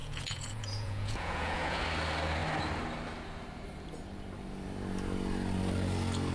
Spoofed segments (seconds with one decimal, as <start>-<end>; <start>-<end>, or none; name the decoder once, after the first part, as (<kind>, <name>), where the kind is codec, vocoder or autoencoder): 0.0-1.8 (vocoder, Vocos)